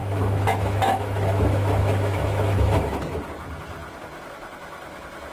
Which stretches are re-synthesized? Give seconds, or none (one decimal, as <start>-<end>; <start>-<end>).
0.0-3.2